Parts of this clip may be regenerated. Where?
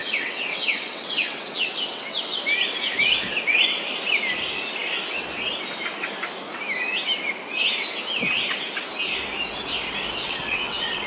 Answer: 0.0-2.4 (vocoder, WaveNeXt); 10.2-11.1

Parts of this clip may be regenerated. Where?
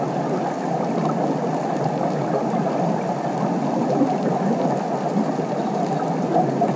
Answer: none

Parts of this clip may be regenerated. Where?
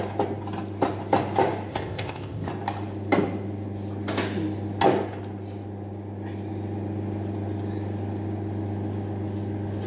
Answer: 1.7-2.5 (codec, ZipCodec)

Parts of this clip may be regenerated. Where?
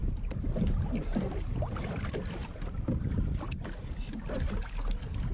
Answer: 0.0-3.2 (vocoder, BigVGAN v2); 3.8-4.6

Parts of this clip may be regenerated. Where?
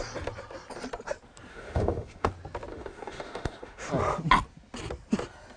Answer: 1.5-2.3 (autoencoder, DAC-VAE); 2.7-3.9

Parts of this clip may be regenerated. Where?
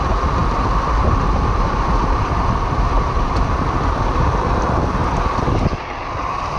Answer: 0.0-6.6 (vocoder, BigVGAN v2)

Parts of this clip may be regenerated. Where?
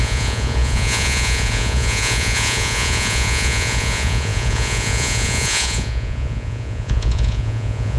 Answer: 0.0-8.0 (vocoder, Vocos)